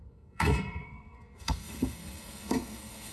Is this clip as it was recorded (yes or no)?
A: no